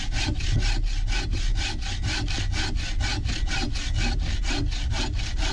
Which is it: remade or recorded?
recorded